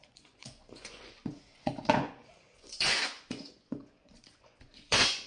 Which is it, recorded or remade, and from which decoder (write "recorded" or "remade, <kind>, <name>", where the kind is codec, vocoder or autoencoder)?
remade, vocoder, Vocos